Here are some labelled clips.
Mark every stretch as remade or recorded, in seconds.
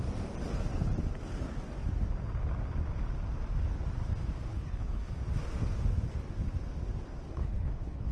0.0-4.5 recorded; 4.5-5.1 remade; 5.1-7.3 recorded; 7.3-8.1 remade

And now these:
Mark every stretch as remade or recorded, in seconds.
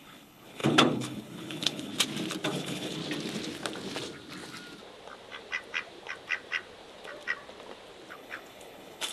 0.0-1.9 remade; 1.9-2.5 recorded; 2.5-3.0 remade; 3.0-8.1 recorded; 8.1-9.1 remade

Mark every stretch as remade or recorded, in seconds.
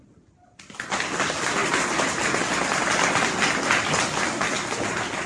0.0-5.3 recorded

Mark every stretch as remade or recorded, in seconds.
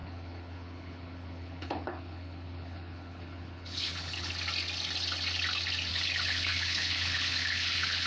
0.0-4.3 remade; 4.3-5.9 recorded; 5.9-8.1 remade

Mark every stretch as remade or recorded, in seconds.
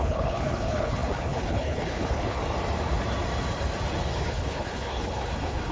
0.0-2.4 remade; 2.4-4.2 recorded; 4.2-5.7 remade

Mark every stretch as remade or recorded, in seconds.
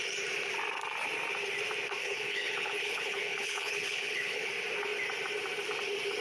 0.0-2.0 recorded; 2.0-4.5 remade; 4.5-6.2 recorded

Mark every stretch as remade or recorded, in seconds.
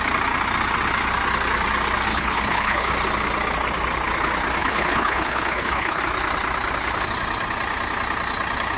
0.0-2.1 recorded; 2.1-2.9 remade; 2.9-4.6 recorded; 4.6-6.0 remade; 6.0-8.8 recorded